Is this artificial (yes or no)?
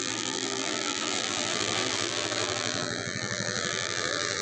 yes